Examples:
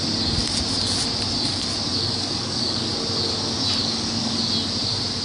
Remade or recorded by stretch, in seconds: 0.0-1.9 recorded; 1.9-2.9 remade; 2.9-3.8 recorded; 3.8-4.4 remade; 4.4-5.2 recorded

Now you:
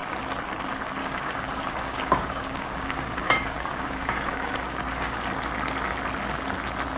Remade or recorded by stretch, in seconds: 0.0-1.0 recorded; 1.0-5.2 remade; 5.2-7.0 recorded

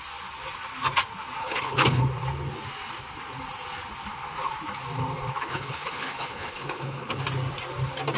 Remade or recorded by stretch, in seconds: 0.0-1.4 recorded; 1.4-2.0 remade; 2.0-5.4 recorded; 5.4-7.2 remade; 7.2-8.2 recorded

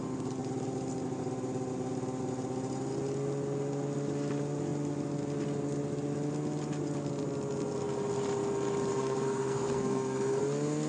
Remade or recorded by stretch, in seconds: 0.0-8.9 recorded; 8.9-10.4 remade; 10.4-10.9 recorded

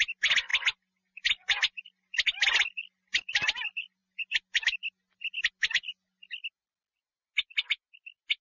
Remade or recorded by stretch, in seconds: 0.0-8.4 recorded

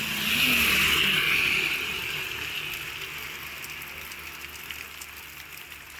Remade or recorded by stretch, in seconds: 0.0-6.0 recorded